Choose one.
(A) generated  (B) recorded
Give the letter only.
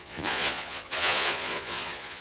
A